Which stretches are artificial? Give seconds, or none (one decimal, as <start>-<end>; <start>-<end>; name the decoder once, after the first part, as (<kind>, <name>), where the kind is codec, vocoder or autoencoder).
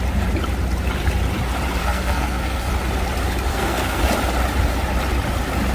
1.8-2.7 (codec, SNAC); 3.5-4.0